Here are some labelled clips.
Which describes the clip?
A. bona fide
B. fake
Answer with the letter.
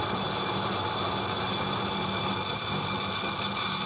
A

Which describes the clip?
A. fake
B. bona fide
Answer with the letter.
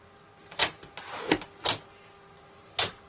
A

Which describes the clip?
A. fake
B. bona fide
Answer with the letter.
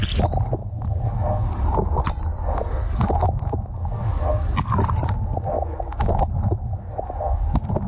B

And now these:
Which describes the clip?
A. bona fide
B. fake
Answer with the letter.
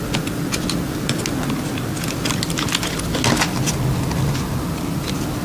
A